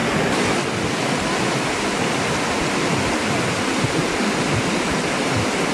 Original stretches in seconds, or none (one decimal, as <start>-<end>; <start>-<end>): 0.0-5.7